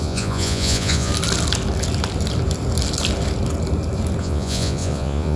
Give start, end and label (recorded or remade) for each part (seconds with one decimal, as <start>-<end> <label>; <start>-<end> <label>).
0.0-1.1 remade; 1.1-4.2 recorded; 4.2-5.4 remade